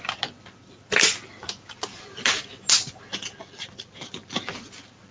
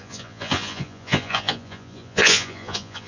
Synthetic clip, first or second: second